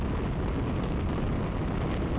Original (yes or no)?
yes